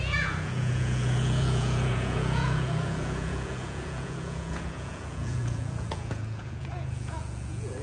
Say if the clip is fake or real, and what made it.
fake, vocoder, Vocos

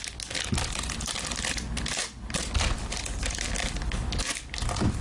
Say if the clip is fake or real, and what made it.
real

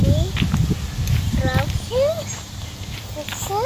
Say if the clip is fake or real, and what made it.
real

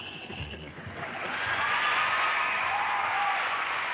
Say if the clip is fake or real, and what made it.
fake, vocoder, Vocos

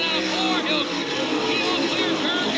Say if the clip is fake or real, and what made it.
real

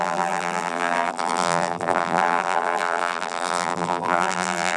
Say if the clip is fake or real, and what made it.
fake, vocoder, BigVGAN v2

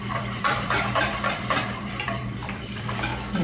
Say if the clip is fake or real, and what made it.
fake, vocoder, BigVGAN v2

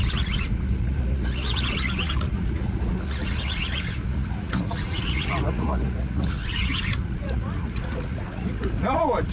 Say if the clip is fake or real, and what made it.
fake, vocoder, Vocos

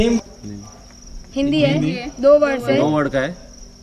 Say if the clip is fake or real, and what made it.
real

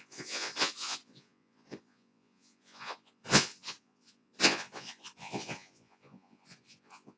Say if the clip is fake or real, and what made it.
fake, vocoder, Vocos